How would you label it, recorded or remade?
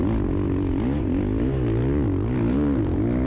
recorded